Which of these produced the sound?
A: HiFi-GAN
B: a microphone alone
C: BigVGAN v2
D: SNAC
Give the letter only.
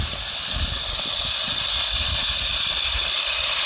B